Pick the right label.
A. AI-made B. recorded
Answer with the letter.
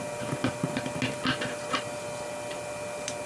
B